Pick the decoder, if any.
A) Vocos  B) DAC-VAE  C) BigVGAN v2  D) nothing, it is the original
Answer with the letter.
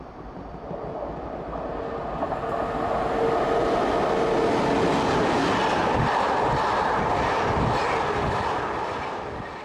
D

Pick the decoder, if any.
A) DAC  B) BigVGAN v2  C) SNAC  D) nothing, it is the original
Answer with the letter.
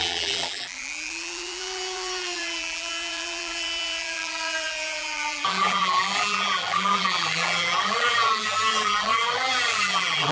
B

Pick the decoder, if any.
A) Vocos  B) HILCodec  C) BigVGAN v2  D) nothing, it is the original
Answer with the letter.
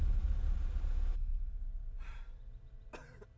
D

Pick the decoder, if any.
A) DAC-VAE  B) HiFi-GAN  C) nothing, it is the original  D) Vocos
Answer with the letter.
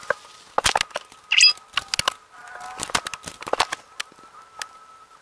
C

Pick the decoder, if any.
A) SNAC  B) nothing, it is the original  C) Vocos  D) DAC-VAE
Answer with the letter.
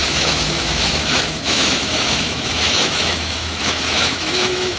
D